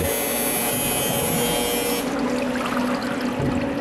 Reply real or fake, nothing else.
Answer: real